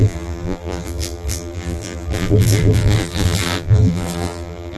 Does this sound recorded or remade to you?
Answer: remade